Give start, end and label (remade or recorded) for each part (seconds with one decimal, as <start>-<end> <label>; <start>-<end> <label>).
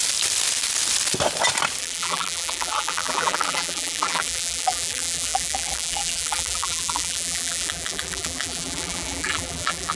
0.0-1.8 recorded; 1.8-9.9 remade